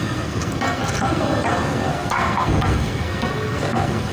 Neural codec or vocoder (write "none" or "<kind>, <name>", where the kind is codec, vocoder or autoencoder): codec, SNAC